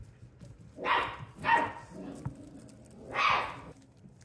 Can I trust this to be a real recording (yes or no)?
yes